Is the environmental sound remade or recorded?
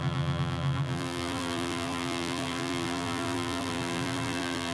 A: remade